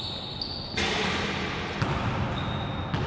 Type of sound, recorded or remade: recorded